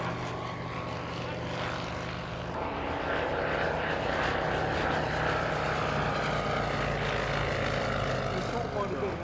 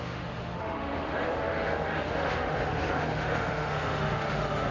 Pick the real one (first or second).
first